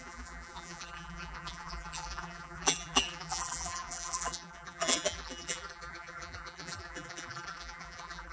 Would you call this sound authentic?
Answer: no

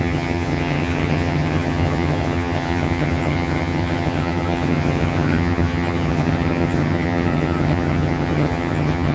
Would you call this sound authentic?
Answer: no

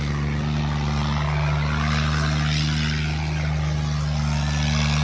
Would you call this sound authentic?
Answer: yes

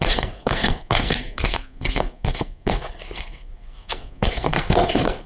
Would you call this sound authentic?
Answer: no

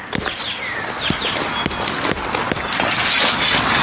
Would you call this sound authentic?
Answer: yes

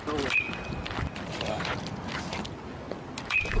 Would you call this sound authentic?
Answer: yes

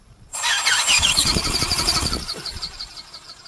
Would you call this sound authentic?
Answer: no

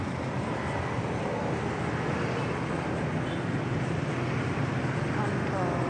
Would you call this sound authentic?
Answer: yes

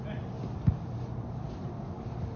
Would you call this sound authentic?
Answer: yes